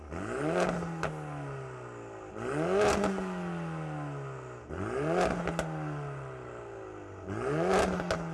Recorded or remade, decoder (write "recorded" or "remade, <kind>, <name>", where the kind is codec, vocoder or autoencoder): recorded